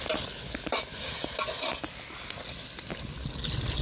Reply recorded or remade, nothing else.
recorded